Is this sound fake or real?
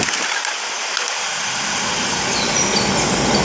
real